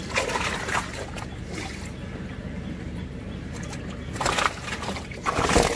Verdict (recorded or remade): recorded